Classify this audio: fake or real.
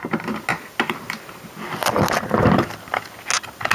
real